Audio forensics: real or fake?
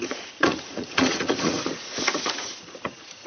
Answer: fake